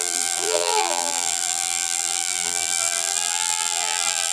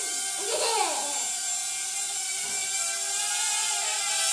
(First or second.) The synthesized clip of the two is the first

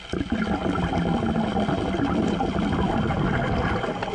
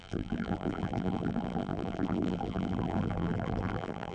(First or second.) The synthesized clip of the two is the second